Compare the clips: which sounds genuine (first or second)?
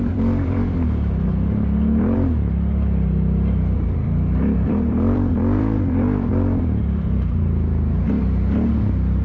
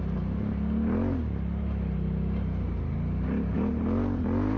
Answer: second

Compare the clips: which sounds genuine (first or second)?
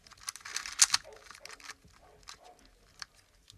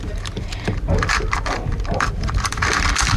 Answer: first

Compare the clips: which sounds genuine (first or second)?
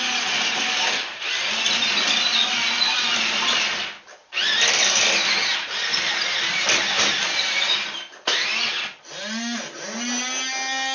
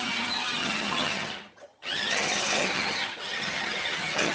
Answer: first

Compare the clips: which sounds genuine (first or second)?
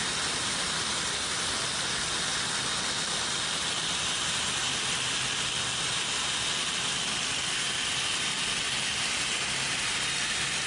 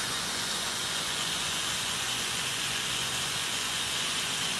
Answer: first